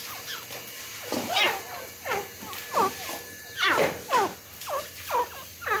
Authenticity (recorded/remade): recorded